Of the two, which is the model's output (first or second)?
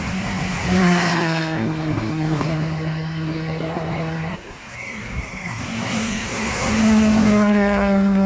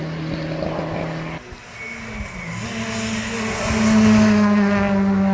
first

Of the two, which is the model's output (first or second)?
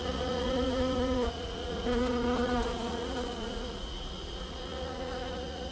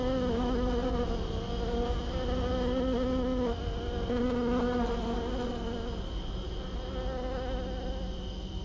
first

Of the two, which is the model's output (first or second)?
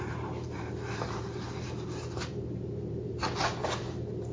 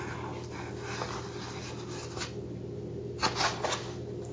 first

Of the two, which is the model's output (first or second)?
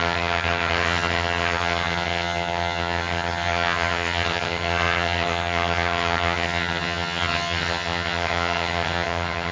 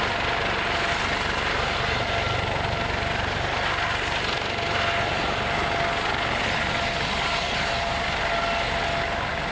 first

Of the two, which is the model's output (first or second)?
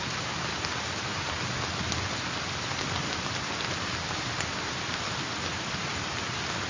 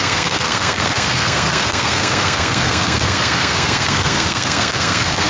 second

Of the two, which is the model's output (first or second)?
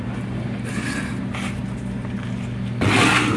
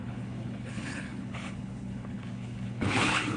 second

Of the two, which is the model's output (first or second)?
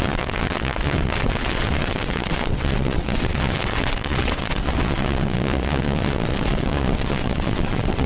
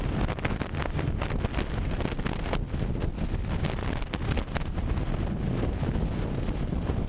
first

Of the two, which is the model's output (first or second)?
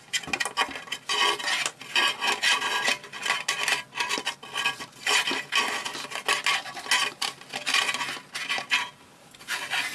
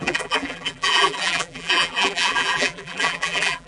second